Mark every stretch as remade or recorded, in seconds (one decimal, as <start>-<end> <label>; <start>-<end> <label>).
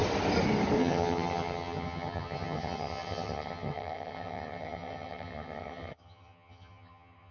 0.0-0.8 recorded; 0.8-7.3 remade